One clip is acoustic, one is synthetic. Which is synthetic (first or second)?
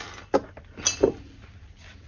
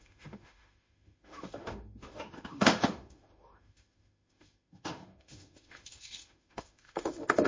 second